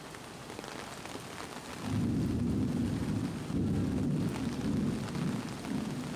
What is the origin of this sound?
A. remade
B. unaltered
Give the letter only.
B